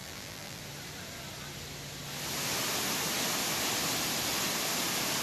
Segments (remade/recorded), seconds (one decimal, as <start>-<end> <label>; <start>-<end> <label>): 0.0-0.6 remade; 0.6-5.2 recorded

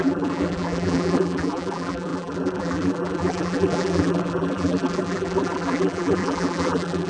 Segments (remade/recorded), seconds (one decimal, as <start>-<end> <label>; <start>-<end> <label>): 0.0-7.1 remade

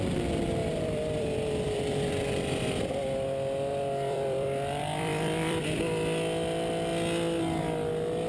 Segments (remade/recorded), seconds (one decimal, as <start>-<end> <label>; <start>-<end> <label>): 0.0-0.6 recorded; 0.6-2.1 remade; 2.1-3.7 recorded; 3.7-5.8 remade; 5.8-8.3 recorded

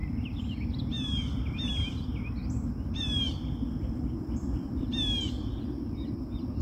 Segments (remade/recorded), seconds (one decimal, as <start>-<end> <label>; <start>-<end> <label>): 0.0-0.8 remade; 0.8-2.4 recorded; 2.4-5.8 remade; 5.8-6.6 recorded

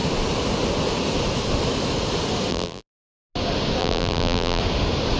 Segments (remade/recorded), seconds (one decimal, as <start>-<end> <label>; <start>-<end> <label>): 0.0-2.5 recorded; 2.5-3.1 remade; 3.1-3.8 recorded; 3.8-4.6 remade; 4.6-5.2 recorded

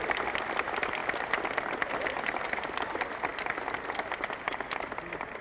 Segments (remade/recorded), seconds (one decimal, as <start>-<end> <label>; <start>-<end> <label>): 0.0-5.4 recorded

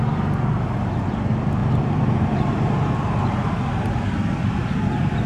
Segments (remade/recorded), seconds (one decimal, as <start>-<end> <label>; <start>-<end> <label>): 0.0-1.6 recorded; 1.6-3.3 remade; 3.3-5.3 recorded